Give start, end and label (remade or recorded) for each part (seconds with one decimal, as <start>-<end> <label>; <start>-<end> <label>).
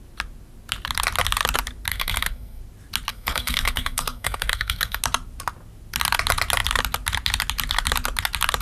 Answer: 0.0-1.9 recorded; 1.9-2.6 remade; 2.6-3.1 recorded; 3.1-5.0 remade; 5.0-8.6 recorded